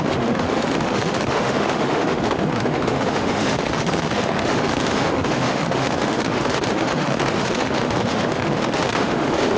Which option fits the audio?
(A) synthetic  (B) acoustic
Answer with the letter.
A